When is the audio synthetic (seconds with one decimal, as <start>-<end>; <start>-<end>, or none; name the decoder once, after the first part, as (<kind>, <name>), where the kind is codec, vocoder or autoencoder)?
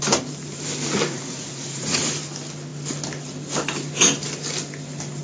1.0-2.2 (vocoder, Vocos)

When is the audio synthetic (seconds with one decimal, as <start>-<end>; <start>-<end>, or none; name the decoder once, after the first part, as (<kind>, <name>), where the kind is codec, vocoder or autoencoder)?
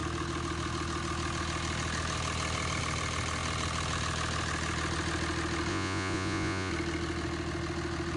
5.7-6.7 (vocoder, Vocos)